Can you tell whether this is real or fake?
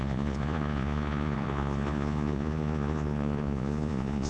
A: fake